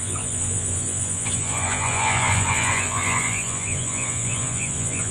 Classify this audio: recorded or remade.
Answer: remade